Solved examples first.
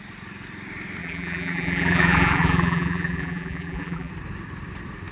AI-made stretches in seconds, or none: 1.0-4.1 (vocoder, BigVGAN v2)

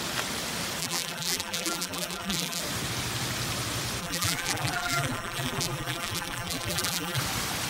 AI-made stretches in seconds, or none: 0.8-2.6 (vocoder, BigVGAN v2); 4.0-7.2

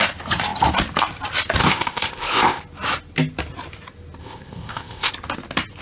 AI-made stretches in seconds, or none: 1.6-2.6 (codec, ZipCodec); 4.2-5.1

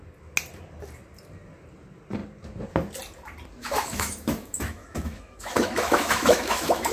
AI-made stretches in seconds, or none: 3.6-6.9 (autoencoder, DAC-VAE)

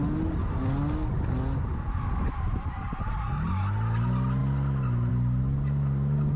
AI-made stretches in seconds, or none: 1.7-3.3 (vocoder, BigVGAN v2)